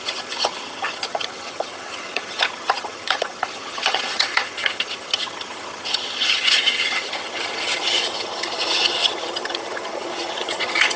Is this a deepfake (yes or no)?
yes